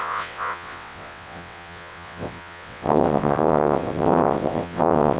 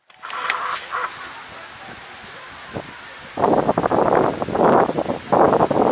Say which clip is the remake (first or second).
first